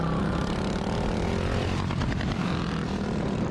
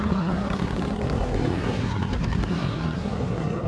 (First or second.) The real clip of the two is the first